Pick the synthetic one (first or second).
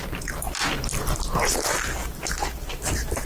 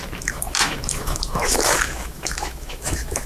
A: second